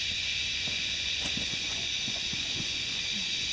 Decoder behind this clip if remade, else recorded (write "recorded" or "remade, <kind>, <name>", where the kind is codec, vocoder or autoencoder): remade, vocoder, Vocos